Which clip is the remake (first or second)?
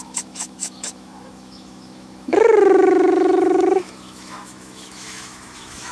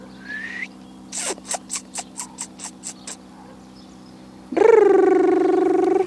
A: first